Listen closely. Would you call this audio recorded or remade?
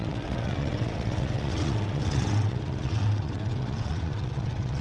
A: remade